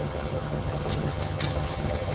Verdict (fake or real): fake